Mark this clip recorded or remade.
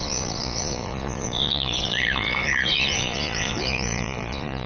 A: remade